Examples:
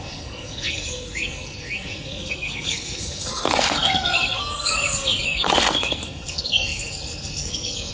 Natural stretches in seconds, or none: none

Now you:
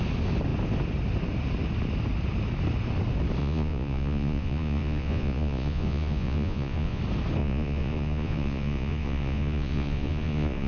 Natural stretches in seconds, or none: 0.0-3.4; 7.0-7.4